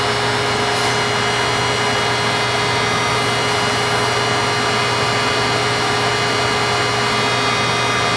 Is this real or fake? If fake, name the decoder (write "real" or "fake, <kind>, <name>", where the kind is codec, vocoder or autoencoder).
real